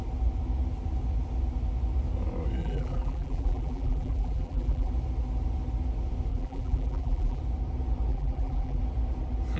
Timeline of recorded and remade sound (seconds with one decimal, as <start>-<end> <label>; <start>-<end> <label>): 0.0-2.6 recorded; 2.6-4.9 remade; 4.9-6.3 recorded; 6.3-7.4 remade; 7.4-8.1 recorded; 8.1-8.8 remade; 8.8-9.6 recorded